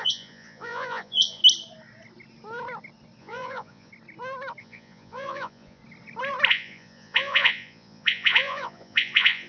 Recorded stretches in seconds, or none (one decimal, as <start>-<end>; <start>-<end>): 1.4-3.2; 3.9-4.6; 5.8-6.5